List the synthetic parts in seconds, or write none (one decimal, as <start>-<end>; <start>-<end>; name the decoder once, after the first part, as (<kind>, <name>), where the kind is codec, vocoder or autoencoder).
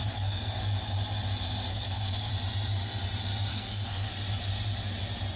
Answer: 0.0-0.6 (codec, SNAC); 1.7-2.3; 3.5-4.1